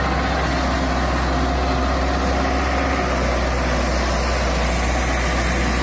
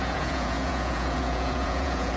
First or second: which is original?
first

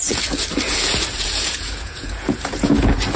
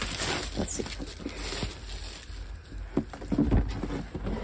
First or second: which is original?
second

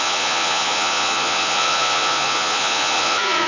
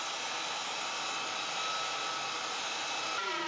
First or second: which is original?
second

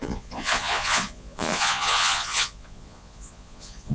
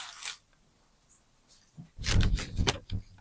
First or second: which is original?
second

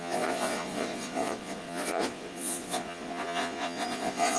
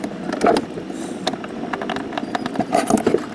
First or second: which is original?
second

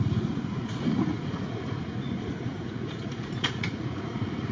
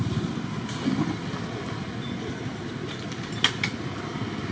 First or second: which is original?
second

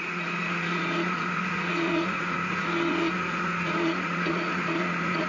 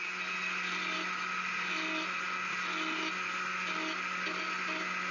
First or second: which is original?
second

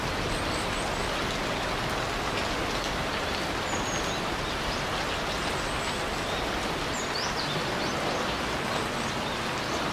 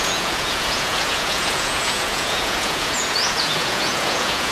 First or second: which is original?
first